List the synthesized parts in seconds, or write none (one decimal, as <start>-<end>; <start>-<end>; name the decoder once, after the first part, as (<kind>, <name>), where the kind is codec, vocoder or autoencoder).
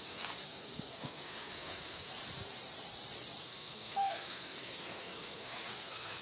0.0-2.1 (codec, SNAC); 3.4-6.2